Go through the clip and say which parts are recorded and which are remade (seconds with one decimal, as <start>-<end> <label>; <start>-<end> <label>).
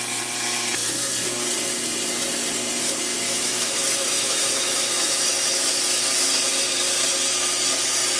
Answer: 0.0-3.1 recorded; 3.1-5.7 remade; 5.7-8.2 recorded